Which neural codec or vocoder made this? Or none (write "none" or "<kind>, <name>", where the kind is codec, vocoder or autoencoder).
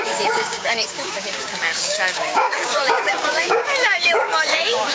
codec, DAC